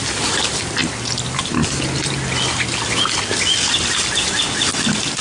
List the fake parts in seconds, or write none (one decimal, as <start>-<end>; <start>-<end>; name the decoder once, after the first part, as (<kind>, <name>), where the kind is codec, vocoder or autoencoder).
none